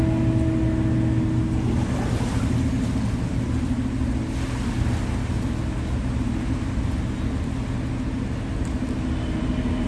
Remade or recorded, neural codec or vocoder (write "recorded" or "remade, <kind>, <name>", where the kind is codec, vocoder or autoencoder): recorded